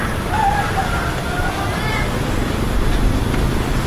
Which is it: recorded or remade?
recorded